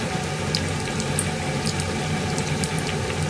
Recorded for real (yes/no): yes